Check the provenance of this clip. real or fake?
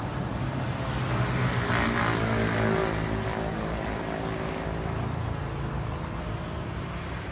real